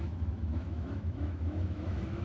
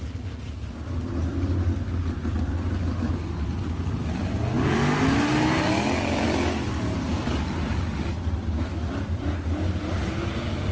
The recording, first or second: second